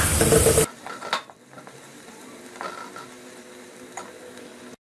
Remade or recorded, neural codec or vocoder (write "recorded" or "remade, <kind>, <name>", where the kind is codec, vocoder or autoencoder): recorded